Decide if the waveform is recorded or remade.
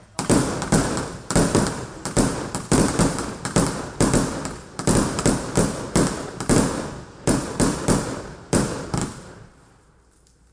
recorded